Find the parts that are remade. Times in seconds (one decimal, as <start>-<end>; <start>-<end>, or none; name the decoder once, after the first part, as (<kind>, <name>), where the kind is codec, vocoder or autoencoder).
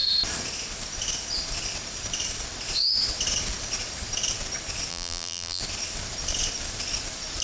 4.9-5.6 (vocoder, BigVGAN v2)